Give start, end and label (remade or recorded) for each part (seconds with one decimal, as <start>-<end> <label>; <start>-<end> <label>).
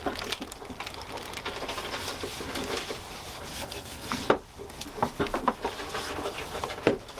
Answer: 0.0-3.5 recorded; 3.5-4.2 remade; 4.2-7.2 recorded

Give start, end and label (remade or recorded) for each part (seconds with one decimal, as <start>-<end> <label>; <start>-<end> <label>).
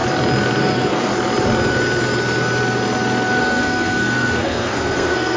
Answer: 0.0-0.6 recorded; 0.6-1.1 remade; 1.1-3.4 recorded; 3.4-5.4 remade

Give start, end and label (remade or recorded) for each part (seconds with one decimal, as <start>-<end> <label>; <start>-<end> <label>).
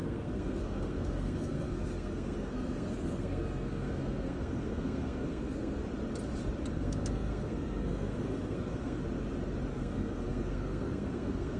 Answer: 0.0-5.8 remade; 5.8-6.7 recorded; 6.7-9.0 remade; 9.0-9.7 recorded; 9.7-11.6 remade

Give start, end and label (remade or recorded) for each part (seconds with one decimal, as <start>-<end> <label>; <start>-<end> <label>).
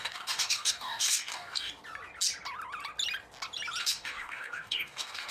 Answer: 0.0-1.7 remade; 1.7-3.8 recorded; 3.8-5.3 remade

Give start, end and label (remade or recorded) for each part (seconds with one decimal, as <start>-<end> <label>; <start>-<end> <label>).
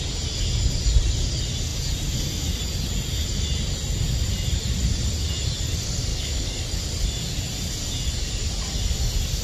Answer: 0.0-6.1 recorded; 6.1-6.7 remade; 6.7-9.4 recorded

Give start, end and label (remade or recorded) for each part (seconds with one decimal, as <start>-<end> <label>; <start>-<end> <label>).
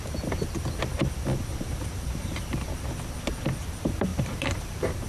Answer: 0.0-1.5 recorded; 1.5-2.6 remade; 2.6-4.1 recorded; 4.1-5.1 remade